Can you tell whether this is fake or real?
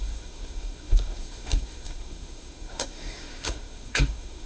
fake